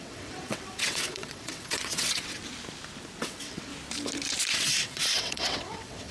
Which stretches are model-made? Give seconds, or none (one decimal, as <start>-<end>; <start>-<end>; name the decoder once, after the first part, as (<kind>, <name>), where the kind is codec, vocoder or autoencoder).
0.0-2.4 (vocoder, WaveNeXt); 3.2-3.7; 4.5-6.1

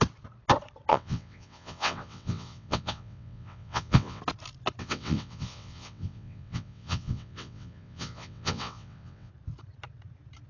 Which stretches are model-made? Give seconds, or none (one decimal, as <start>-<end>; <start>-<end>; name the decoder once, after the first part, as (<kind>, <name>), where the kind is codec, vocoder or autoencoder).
0.9-4.2 (vocoder, WaveNeXt); 4.8-9.3

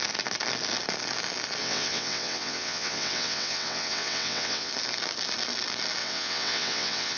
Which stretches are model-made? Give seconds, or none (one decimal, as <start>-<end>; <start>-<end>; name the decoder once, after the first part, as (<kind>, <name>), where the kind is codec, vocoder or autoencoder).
1.6-4.7 (vocoder, WaveNeXt); 6.0-7.2

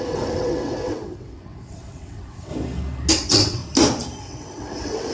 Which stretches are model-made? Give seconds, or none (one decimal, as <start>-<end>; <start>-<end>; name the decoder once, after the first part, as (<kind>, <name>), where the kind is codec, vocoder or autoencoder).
0.0-2.5 (vocoder, WaveNeXt); 3.1-3.6; 4.2-5.1